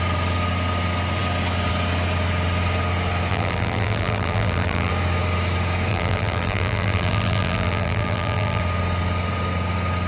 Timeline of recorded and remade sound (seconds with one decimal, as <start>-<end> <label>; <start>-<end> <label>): 0.0-3.3 recorded; 3.3-4.9 remade; 4.9-5.9 recorded; 5.9-8.6 remade; 8.6-10.1 recorded